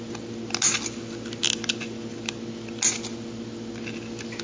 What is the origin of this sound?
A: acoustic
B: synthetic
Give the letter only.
A